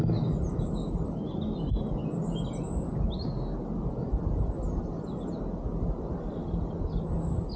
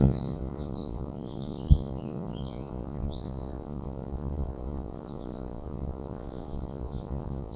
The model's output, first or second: second